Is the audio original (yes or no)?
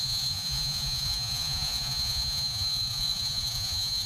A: no